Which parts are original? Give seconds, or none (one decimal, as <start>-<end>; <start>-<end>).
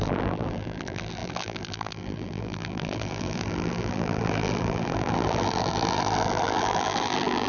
none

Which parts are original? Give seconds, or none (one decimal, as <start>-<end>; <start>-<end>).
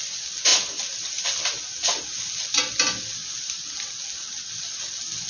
0.0-5.3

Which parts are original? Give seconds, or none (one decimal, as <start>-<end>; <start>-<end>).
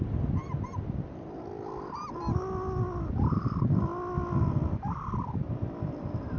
0.0-6.4